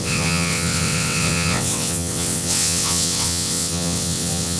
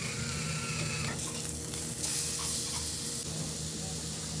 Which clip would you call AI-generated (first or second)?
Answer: first